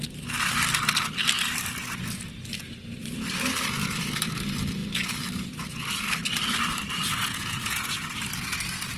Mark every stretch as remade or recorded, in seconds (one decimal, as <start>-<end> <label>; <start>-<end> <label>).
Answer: 0.0-7.2 recorded; 7.2-8.1 remade; 8.1-9.0 recorded